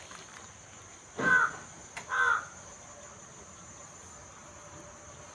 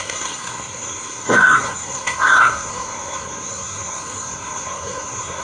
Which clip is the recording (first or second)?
first